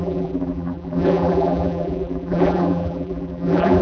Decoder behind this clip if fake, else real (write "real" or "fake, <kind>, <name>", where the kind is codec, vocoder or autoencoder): fake, vocoder, BigVGAN v2